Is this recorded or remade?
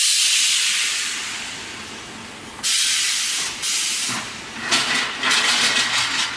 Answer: recorded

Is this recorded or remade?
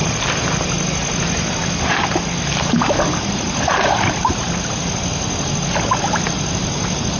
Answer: recorded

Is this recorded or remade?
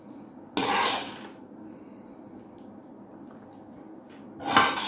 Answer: recorded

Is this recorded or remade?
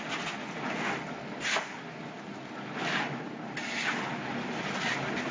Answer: recorded